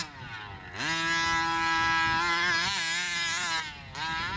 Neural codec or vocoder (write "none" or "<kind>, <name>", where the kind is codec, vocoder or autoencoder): none